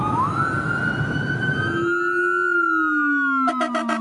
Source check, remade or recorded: recorded